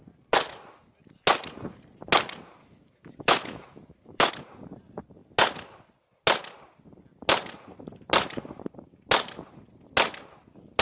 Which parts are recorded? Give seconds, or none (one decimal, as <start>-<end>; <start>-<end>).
0.0-2.6; 4.3-10.8